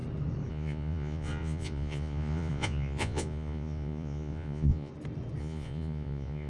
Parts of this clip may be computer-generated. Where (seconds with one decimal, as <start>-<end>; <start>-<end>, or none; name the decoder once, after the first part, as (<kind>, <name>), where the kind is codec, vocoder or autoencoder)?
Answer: 0.5-4.9 (vocoder, Vocos); 5.4-6.5